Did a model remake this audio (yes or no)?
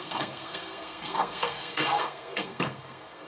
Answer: yes